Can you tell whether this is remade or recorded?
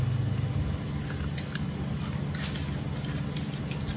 recorded